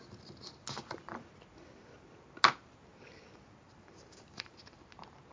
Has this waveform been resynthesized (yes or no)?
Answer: no